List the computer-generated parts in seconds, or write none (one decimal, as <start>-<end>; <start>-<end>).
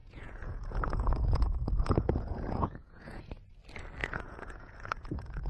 0.0-3.2; 4.0-5.5